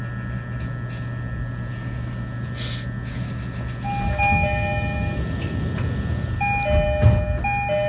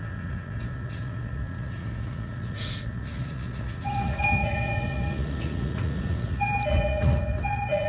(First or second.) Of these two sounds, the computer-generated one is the second